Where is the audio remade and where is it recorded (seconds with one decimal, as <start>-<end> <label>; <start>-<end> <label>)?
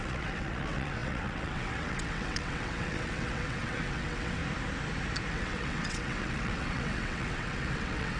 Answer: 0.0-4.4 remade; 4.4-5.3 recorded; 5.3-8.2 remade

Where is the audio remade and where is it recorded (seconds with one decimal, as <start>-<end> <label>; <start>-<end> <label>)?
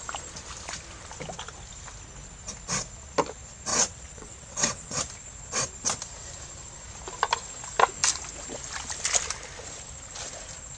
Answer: 0.0-3.7 recorded; 3.7-5.0 remade; 5.0-10.8 recorded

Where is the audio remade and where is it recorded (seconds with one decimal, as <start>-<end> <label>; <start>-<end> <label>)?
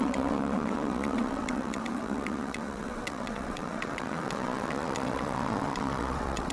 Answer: 0.0-6.5 remade